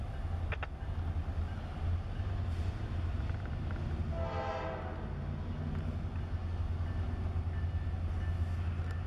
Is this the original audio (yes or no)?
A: yes